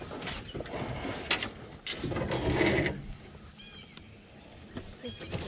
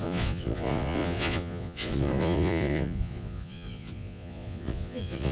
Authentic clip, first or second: first